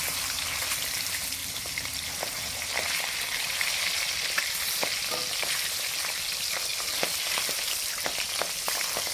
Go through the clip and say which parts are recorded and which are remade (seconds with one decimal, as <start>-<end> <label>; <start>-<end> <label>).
0.0-9.1 recorded